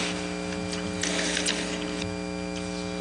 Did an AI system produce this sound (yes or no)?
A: no